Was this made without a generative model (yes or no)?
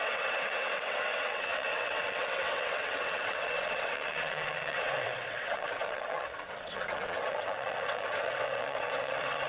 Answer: no